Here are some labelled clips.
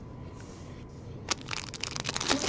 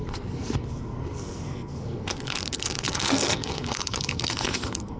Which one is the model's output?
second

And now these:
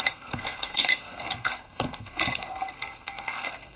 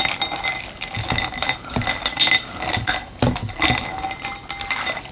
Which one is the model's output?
first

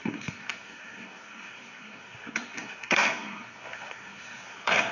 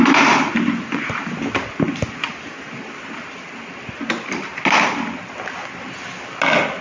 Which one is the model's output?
first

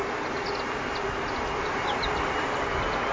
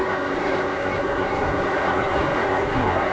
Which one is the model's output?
second